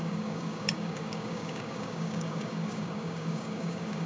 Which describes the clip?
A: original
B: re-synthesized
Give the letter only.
B